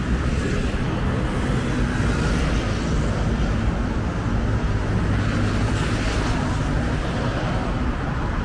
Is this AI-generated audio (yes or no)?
no